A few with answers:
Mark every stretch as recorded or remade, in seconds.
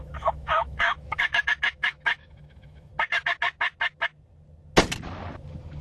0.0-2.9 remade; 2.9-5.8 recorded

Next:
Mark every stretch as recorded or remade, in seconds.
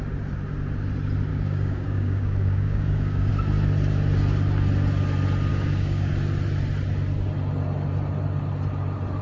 0.0-1.3 recorded; 1.3-3.3 remade; 3.3-5.5 recorded; 5.5-6.1 remade; 6.1-9.2 recorded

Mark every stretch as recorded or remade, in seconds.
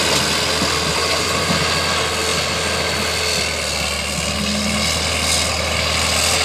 0.0-0.9 recorded; 0.9-1.5 remade; 1.5-6.4 recorded